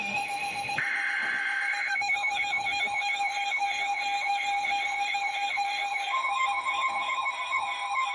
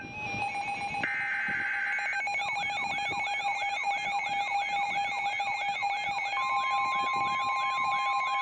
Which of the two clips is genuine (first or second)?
second